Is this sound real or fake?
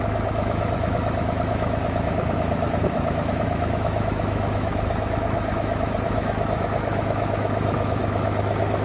fake